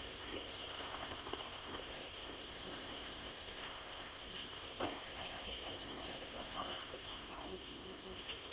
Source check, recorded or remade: remade